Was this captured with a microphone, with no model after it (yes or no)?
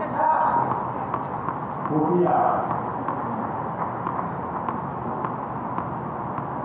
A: yes